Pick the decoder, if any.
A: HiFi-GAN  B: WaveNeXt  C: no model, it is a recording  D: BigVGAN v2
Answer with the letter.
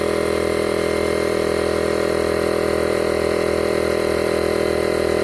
C